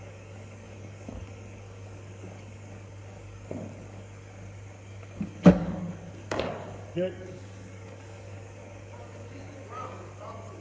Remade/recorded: remade